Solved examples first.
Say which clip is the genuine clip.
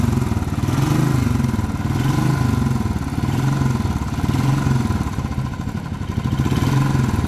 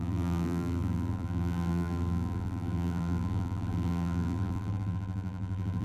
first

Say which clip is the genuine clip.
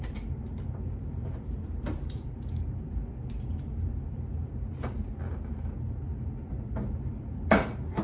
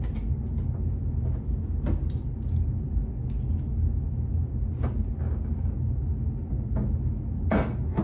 second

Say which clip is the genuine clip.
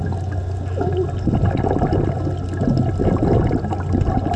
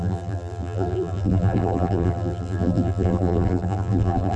first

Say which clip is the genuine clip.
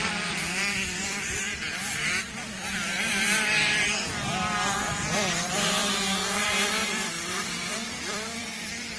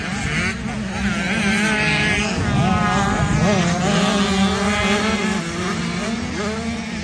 second